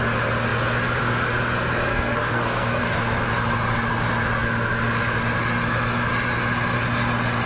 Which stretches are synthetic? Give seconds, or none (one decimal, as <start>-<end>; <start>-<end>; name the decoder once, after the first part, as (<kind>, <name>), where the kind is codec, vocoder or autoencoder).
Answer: 1.9-2.8 (codec, SNAC)